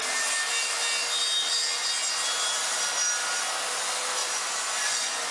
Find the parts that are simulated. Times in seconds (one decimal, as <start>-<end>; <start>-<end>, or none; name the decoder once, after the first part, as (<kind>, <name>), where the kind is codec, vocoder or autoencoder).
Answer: 4.2-5.3 (vocoder, Vocos)